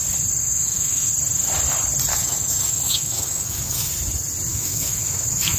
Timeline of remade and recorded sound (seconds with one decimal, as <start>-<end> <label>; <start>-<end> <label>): 0.0-0.4 recorded; 0.4-1.1 remade; 1.1-2.1 recorded; 2.1-3.9 remade; 3.9-4.5 recorded; 4.5-5.6 remade